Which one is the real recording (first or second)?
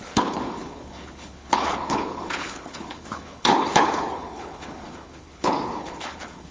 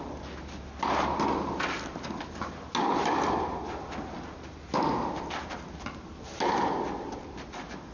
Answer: second